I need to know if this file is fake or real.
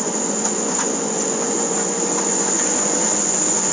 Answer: fake